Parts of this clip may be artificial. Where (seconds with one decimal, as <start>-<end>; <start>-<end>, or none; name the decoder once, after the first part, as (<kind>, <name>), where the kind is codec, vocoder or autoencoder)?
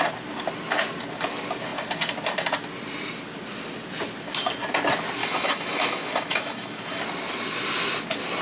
5.2-7.0 (autoencoder, DAC-VAE)